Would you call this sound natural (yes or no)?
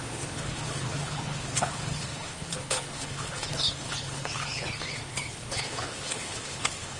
no